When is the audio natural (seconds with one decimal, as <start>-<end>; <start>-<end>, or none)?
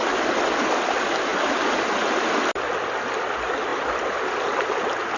0.0-5.2